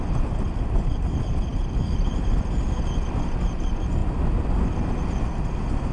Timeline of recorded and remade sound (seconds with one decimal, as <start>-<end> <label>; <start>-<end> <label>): 0.0-5.9 recorded